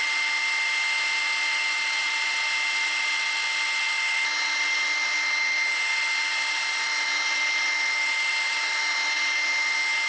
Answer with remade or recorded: recorded